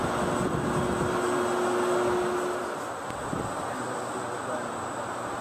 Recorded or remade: recorded